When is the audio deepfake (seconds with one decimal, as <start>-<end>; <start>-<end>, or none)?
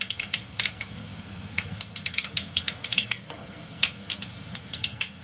0.0-5.2